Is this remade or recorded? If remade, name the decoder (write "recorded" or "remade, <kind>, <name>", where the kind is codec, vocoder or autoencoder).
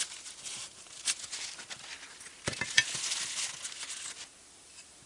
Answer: recorded